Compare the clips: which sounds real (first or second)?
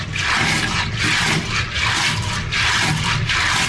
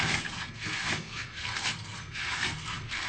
first